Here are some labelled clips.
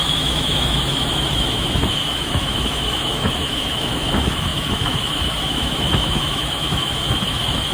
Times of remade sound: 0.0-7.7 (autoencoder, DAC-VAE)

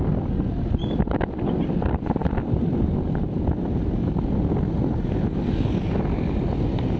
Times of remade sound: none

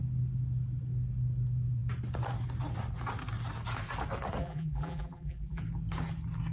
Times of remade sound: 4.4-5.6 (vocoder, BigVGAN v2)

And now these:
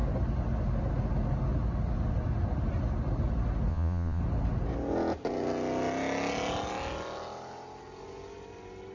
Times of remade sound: 3.7-4.2 (vocoder, Vocos)